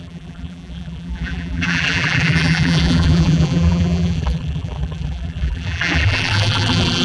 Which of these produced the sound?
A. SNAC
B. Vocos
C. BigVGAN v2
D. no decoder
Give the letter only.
C